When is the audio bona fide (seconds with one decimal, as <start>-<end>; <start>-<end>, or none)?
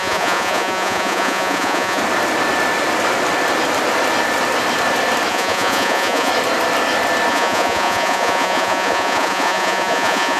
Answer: 2.0-5.3; 6.3-7.3